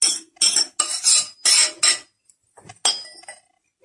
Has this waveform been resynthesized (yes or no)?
no